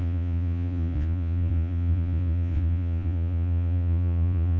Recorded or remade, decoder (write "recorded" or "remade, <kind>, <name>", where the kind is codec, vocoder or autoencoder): remade, vocoder, Vocos